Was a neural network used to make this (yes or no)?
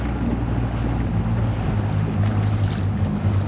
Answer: no